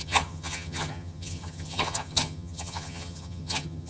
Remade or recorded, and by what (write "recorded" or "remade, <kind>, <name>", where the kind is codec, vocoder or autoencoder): remade, vocoder, HiFi-GAN